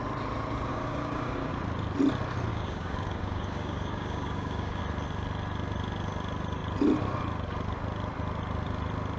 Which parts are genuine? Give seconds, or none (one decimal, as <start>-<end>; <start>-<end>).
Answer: 0.0-0.7; 1.5-2.5; 4.8-9.2